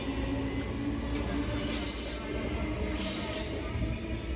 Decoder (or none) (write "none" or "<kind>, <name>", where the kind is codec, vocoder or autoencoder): none